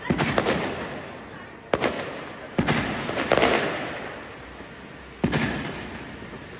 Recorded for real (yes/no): yes